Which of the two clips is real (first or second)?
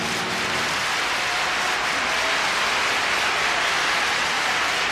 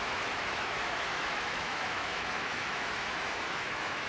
first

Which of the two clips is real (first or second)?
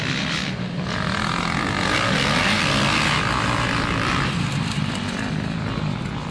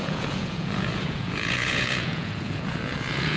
first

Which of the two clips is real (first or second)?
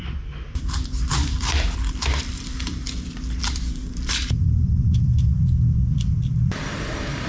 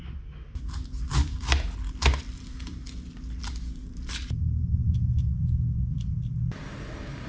second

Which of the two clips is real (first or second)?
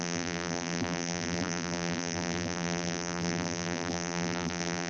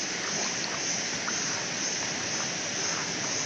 second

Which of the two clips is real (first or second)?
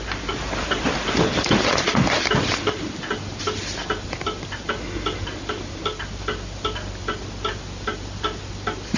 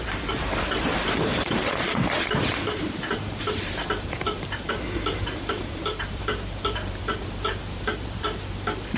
first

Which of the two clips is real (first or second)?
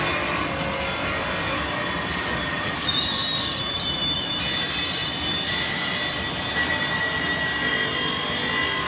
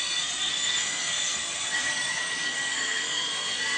first